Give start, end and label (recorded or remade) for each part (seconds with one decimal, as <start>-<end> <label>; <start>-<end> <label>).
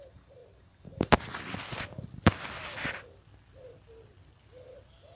0.0-5.2 recorded